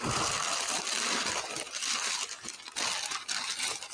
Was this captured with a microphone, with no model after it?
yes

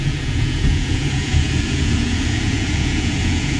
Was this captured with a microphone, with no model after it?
no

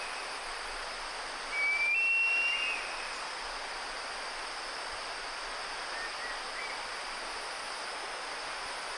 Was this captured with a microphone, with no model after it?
yes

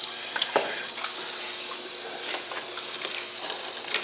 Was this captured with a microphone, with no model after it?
yes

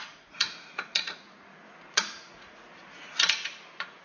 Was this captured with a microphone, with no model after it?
no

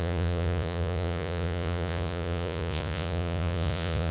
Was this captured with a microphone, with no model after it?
no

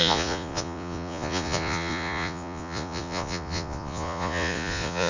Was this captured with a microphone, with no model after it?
no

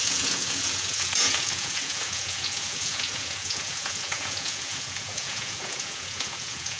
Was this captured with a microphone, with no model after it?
no